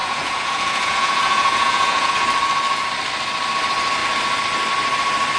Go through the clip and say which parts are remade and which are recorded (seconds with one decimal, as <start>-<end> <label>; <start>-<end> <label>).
0.0-2.1 remade; 2.1-5.4 recorded